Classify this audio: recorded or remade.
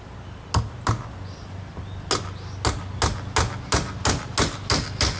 recorded